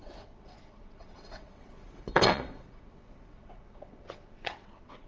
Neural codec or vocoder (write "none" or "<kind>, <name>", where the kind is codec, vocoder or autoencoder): vocoder, WaveNeXt